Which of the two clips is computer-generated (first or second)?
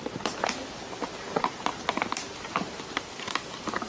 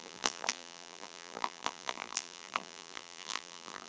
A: second